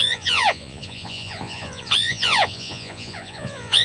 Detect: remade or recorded remade